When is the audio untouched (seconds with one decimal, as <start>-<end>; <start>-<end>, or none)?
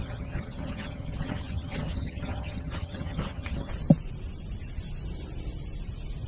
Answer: 3.7-6.3